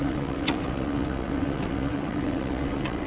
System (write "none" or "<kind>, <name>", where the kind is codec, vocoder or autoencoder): vocoder, WaveNeXt